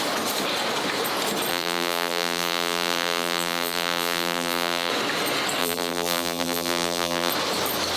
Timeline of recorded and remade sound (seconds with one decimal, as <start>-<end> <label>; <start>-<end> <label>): 0.0-1.5 recorded; 1.5-4.9 remade; 4.9-5.6 recorded; 5.6-7.3 remade; 7.3-8.0 recorded